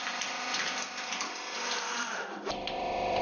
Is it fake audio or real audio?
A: fake